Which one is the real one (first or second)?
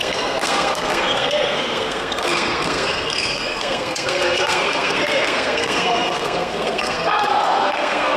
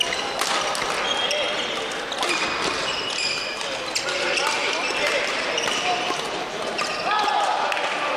second